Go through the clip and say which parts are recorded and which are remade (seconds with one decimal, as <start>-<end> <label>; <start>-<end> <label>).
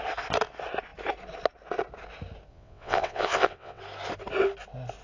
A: 0.0-2.5 recorded; 2.5-3.8 remade; 3.8-5.0 recorded